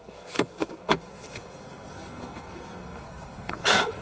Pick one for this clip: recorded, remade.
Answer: remade